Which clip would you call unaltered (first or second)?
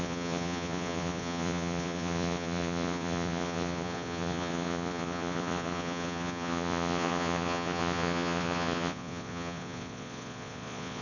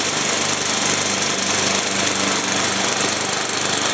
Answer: second